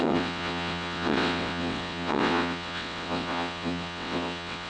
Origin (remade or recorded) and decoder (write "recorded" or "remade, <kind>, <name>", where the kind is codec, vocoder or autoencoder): remade, vocoder, WaveNeXt